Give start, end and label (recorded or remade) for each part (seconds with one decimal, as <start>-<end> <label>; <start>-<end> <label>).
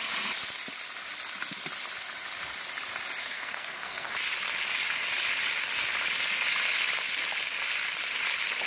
0.0-3.2 recorded; 3.2-4.1 remade; 4.1-8.7 recorded